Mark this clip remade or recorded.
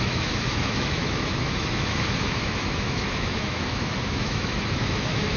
remade